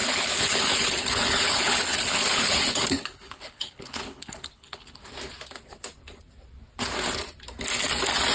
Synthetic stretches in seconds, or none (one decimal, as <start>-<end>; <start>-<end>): 0.0-5.0